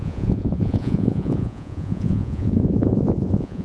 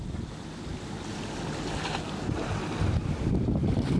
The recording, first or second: second